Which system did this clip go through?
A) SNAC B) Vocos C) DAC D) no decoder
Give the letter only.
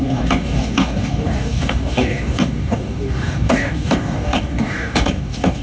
C